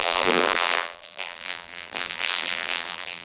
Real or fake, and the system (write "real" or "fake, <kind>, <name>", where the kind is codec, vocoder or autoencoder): fake, vocoder, BigVGAN v2